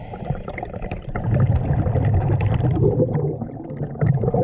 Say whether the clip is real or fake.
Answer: real